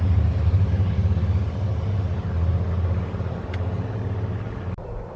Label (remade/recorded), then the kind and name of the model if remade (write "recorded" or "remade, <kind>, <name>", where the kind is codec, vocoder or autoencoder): recorded